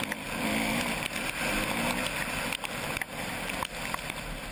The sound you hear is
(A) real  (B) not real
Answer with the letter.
A